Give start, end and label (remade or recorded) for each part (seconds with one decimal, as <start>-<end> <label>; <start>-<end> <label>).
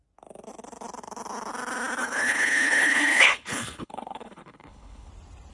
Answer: 0.0-2.0 recorded; 2.0-5.1 remade; 5.1-5.5 recorded